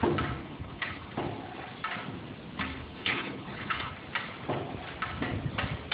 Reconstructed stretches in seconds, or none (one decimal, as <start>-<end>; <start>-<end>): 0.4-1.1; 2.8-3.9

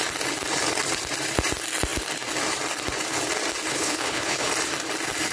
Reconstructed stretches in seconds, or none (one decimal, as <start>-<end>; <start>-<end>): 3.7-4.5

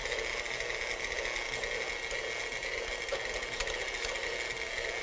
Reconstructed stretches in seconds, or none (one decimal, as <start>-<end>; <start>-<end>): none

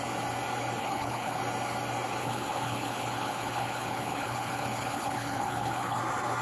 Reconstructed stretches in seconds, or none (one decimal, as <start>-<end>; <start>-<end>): 0.8-1.4; 2.2-6.0